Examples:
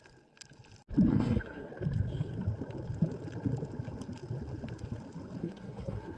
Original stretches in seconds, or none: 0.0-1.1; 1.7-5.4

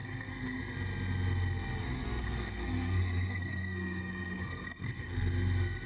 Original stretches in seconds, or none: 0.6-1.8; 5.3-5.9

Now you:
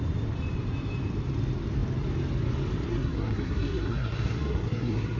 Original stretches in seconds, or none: 0.0-2.9